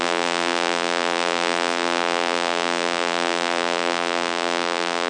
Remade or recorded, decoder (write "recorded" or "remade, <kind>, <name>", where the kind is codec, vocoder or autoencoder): remade, vocoder, BigVGAN v2